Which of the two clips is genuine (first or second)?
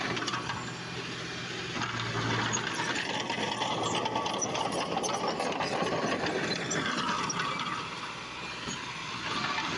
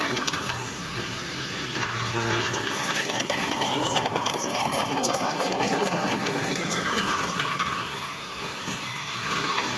first